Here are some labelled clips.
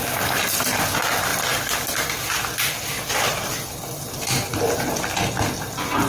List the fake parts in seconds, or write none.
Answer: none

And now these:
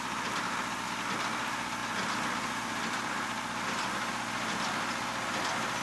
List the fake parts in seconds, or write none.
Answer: none

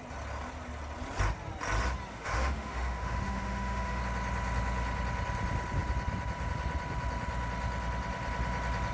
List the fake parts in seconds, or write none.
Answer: 2.1-4.0 (autoencoder, DAC-VAE)

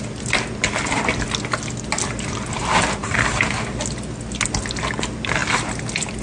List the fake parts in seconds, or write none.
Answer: none

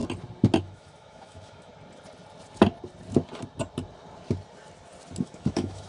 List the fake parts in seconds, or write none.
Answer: 0.6-1.7 (autoencoder, DAC-VAE); 5.2-5.9

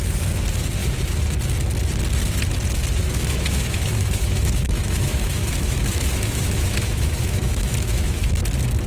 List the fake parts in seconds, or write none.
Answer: 3.0-8.3 (autoencoder, DAC-VAE)